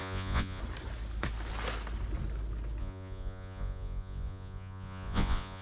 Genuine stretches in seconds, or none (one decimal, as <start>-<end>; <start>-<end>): 0.6-2.8